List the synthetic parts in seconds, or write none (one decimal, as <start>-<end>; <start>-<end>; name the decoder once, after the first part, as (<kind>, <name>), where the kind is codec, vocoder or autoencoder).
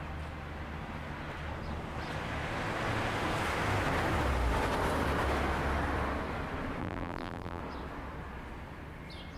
6.8-7.6 (vocoder, BigVGAN v2)